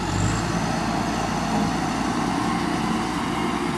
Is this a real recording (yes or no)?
yes